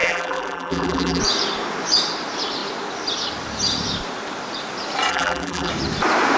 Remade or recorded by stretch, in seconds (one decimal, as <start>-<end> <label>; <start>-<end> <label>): 0.0-1.2 remade; 1.2-5.1 recorded; 5.1-5.7 remade; 5.7-6.4 recorded